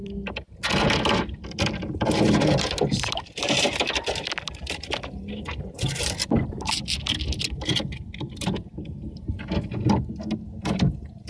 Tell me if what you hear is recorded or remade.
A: recorded